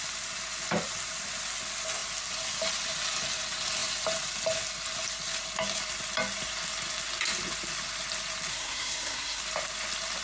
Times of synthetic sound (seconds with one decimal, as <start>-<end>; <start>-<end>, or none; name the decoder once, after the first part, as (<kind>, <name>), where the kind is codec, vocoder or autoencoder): 8.5-9.4 (codec, SNAC)